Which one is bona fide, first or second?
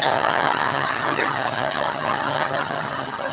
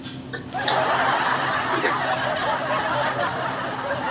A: second